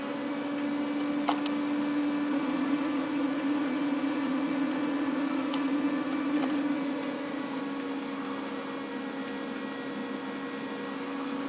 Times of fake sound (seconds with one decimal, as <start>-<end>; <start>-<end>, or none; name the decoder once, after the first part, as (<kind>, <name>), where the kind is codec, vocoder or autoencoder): 2.3-7.6 (vocoder, Vocos)